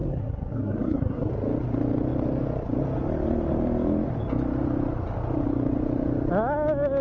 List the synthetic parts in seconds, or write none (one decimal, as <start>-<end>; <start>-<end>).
0.0-1.3